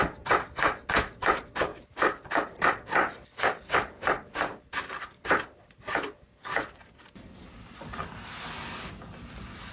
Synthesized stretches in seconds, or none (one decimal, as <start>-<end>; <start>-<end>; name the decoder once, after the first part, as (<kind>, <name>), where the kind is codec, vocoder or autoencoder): none